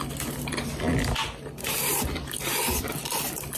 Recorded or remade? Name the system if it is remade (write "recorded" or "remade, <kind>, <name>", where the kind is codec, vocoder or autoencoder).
remade, vocoder, BigVGAN v2